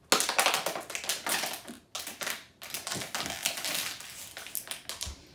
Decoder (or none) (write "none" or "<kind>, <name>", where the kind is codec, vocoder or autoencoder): none